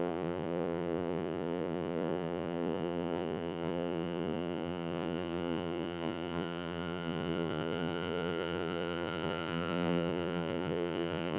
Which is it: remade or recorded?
remade